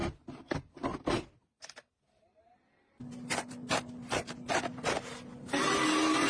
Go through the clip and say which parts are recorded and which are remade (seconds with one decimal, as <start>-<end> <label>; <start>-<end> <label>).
0.0-6.3 recorded